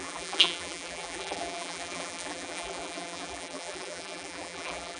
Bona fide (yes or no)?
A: no